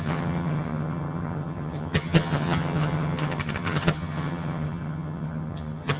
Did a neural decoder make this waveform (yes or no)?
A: yes